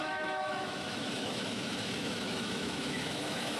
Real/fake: fake